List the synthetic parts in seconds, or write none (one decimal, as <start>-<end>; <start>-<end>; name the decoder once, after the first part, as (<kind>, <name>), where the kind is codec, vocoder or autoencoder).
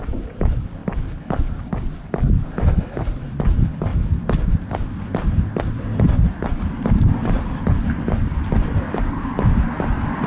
0.0-0.8 (vocoder, BigVGAN v2); 2.7-10.3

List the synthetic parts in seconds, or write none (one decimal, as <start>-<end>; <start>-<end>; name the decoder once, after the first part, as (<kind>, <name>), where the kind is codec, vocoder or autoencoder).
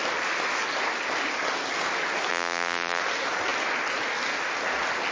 2.3-3.0 (vocoder, BigVGAN v2)